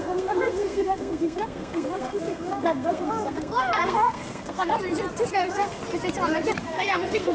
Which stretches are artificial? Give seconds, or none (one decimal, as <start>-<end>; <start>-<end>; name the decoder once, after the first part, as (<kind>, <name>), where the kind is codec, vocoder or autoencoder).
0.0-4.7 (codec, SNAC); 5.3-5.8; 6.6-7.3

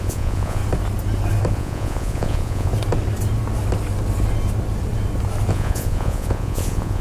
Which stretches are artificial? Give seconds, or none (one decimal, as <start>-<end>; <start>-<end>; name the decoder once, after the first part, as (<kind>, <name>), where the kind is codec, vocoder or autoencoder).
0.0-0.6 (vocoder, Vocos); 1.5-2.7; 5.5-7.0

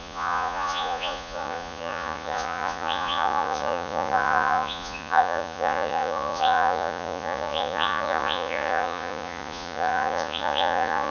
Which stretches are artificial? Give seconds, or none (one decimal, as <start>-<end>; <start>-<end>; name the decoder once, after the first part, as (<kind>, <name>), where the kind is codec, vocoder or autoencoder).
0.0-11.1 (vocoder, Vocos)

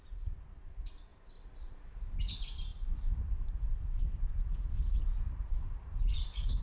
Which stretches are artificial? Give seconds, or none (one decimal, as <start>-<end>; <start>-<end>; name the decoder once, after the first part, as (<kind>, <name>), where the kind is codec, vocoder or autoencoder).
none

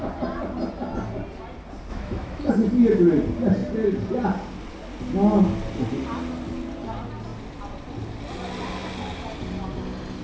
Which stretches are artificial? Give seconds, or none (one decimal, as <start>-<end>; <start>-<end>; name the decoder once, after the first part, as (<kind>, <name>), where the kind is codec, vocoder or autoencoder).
1.9-2.5 (autoencoder, DAC-VAE)

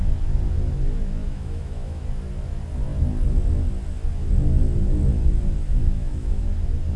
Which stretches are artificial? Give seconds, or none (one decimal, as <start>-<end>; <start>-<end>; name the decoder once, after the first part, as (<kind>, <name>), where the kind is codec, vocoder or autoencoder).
1.2-2.0 (autoencoder, DAC-VAE); 5.8-6.5

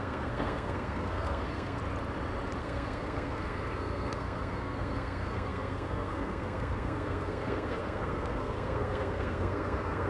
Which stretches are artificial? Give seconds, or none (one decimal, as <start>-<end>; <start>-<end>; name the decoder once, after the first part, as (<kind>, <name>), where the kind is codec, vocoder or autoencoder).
0.0-1.8 (codec, SNAC); 2.6-10.1

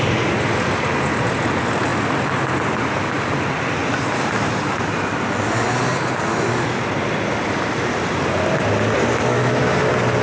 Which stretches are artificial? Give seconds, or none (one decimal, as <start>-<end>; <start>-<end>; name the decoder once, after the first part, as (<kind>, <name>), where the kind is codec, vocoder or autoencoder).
none